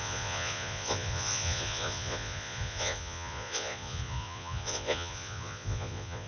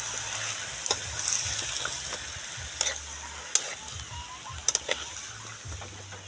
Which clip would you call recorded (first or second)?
second